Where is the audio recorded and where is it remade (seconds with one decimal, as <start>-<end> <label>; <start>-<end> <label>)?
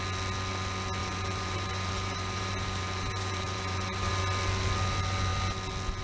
0.0-1.0 recorded; 1.0-4.1 remade; 4.1-6.0 recorded